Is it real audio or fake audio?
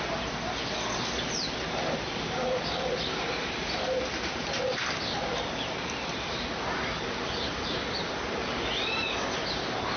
real